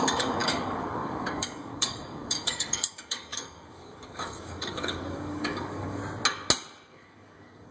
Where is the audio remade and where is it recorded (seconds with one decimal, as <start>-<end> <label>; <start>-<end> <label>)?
0.0-6.0 remade; 6.0-6.9 recorded; 6.9-7.7 remade